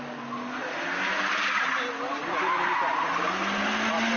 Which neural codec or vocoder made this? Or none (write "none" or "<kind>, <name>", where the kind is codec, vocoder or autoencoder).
none